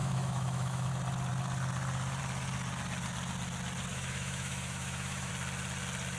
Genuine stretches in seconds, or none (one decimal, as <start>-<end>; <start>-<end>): 0.9-3.9; 5.3-6.2